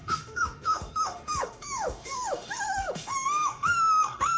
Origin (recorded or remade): remade